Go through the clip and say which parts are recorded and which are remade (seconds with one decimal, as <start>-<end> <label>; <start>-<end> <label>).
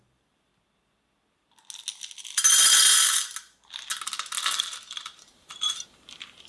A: 0.0-0.5 remade; 0.5-4.4 recorded; 4.4-5.5 remade; 5.5-6.1 recorded; 6.1-6.5 remade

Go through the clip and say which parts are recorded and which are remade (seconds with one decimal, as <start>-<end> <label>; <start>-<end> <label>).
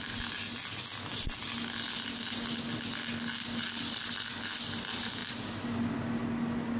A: 0.0-6.8 recorded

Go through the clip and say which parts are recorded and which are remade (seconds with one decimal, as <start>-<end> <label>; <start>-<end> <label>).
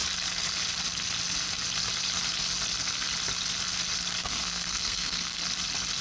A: 0.0-4.2 recorded; 4.2-5.4 remade; 5.4-6.0 recorded